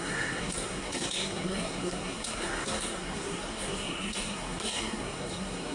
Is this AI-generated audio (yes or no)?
yes